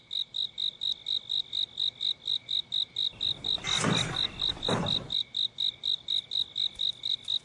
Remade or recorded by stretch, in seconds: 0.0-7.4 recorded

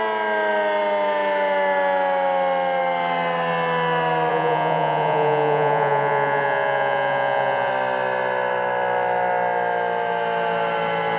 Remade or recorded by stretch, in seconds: 0.0-4.3 recorded; 4.3-7.7 remade; 7.7-11.2 recorded

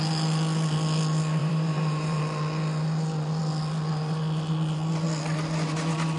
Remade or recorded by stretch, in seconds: 0.0-1.4 recorded; 1.4-2.2 remade; 2.2-6.2 recorded